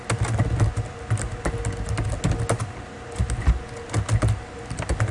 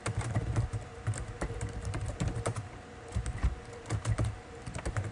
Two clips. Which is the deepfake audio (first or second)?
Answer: second